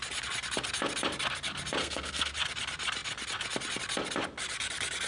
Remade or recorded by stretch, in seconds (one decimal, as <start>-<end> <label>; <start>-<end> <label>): 0.0-1.8 recorded; 1.8-2.3 remade; 2.3-5.1 recorded